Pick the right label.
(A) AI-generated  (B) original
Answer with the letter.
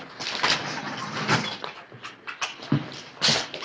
B